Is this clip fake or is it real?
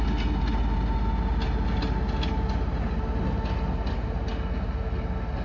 real